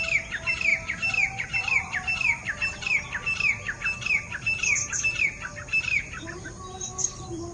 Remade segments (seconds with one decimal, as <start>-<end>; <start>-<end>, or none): none